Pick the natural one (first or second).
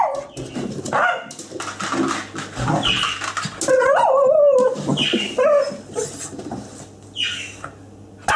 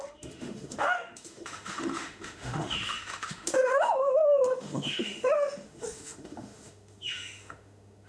first